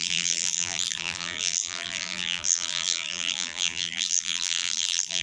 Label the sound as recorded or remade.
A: remade